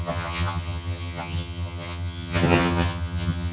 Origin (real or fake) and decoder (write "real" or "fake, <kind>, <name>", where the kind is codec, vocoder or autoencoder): fake, vocoder, HiFi-GAN